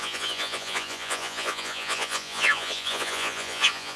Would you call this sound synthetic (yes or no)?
yes